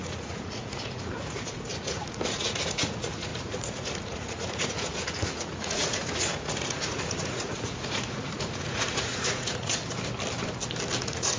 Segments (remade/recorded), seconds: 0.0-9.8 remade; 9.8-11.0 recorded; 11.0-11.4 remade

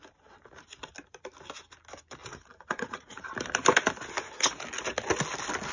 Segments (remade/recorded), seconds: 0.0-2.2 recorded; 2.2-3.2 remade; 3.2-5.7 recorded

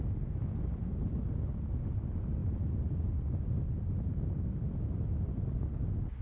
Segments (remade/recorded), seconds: 0.0-6.2 recorded

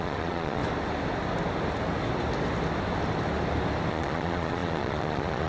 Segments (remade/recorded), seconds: 0.0-0.6 remade; 0.6-3.9 recorded; 3.9-5.5 remade

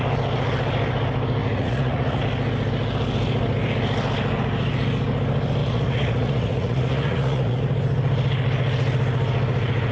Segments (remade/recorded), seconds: 0.0-1.4 recorded; 1.4-2.2 remade; 2.2-5.6 recorded; 5.6-7.6 remade; 7.6-9.9 recorded

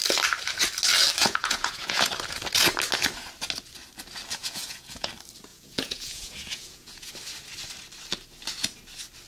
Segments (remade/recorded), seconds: 0.0-1.2 recorded; 1.2-2.1 remade; 2.1-4.4 recorded; 4.4-5.1 remade; 5.1-5.5 recorded; 5.5-7.1 remade; 7.1-9.3 recorded

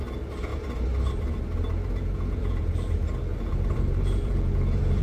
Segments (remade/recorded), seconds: 0.0-1.8 recorded; 1.8-2.6 remade; 2.6-3.3 recorded; 3.3-5.0 remade